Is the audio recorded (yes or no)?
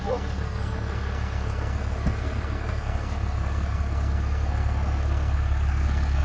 no